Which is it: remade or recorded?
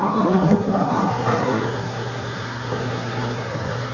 remade